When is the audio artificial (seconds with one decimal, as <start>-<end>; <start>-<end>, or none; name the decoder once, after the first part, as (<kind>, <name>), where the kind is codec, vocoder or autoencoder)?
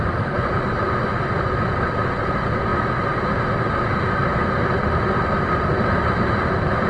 0.0-1.1 (vocoder, BigVGAN v2); 2.2-2.7; 3.2-4.2; 5.8-6.9